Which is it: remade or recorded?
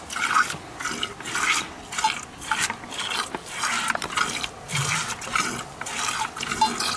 recorded